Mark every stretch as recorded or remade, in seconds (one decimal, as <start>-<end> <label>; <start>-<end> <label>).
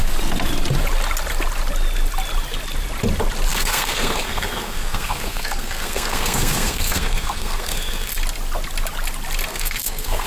0.0-3.5 recorded; 3.5-8.1 remade; 8.1-9.5 recorded; 9.5-10.3 remade